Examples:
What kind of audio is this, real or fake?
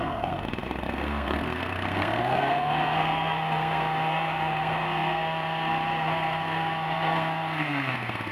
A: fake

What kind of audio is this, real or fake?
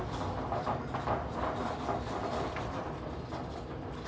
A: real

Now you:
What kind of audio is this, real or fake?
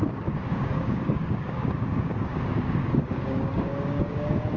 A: fake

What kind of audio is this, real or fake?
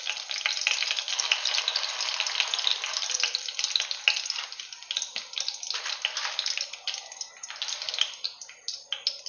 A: real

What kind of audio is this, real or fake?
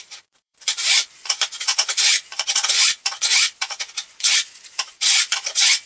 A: fake